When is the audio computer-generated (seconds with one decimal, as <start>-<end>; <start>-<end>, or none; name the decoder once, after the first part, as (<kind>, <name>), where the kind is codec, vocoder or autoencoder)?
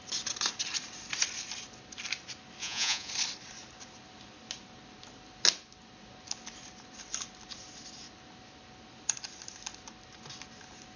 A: 2.6-3.1 (vocoder, Vocos)